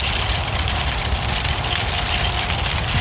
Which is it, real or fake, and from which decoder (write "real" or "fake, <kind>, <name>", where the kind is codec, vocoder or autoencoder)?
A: real